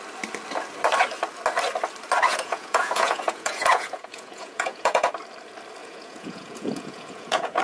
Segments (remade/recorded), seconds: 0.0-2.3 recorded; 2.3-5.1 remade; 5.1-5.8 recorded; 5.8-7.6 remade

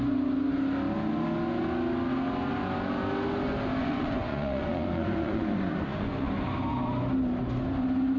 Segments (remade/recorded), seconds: 0.0-3.8 recorded; 3.8-6.3 remade; 6.3-8.2 recorded

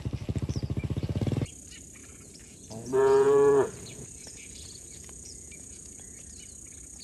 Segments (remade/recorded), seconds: 0.0-2.0 recorded; 2.0-6.2 remade; 6.2-7.0 recorded

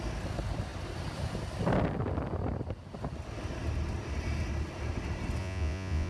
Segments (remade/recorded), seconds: 0.0-5.4 recorded; 5.4-6.1 remade

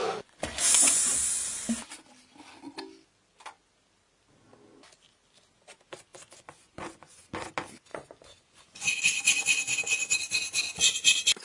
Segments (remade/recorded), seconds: 0.0-1.0 remade; 1.0-6.1 recorded; 6.1-7.5 remade; 7.5-7.9 recorded; 7.9-9.0 remade; 9.0-11.4 recorded